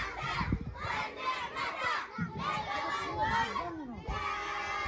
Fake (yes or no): no